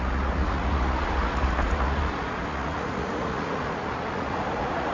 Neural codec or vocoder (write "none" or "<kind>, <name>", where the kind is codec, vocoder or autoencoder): vocoder, Vocos